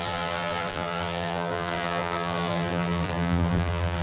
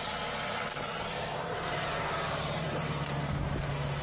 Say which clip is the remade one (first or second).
first